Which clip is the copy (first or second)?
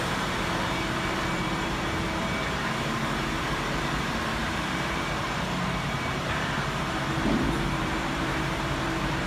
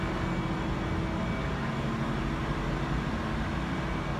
first